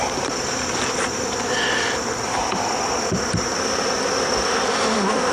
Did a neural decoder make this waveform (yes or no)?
yes